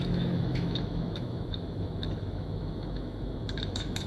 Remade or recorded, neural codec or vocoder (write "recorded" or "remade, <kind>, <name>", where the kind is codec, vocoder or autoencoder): remade, autoencoder, DAC-VAE